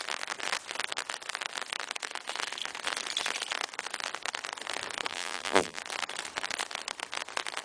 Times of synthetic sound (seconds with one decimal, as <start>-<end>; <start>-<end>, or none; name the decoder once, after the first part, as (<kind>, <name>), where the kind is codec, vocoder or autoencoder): 5.1-5.8 (vocoder, BigVGAN v2)

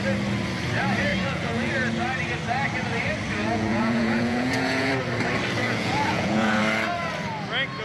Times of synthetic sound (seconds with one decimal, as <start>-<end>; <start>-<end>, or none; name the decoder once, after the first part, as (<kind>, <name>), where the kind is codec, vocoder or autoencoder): 1.1-1.7 (vocoder, Vocos); 3.4-4.9; 5.6-6.6